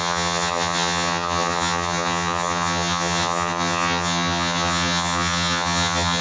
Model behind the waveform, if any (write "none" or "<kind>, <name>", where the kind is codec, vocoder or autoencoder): vocoder, HiFi-GAN